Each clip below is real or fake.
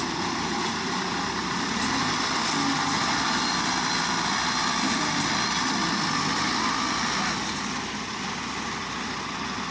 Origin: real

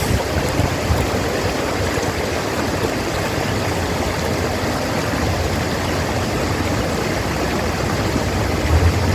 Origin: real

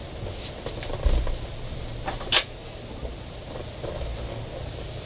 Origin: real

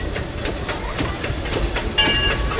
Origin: fake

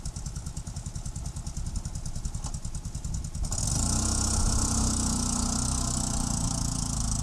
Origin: real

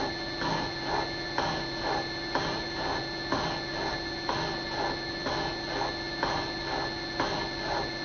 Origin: real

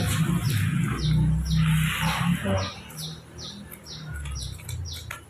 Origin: real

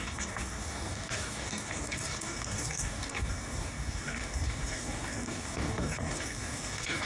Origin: fake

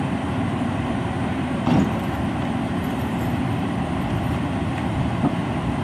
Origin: fake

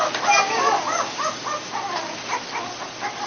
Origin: real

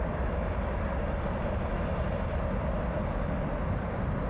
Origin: real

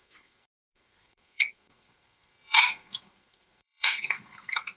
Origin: fake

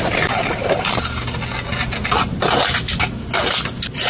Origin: real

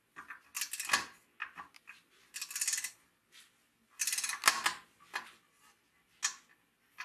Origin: real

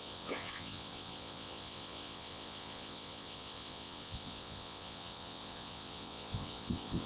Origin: fake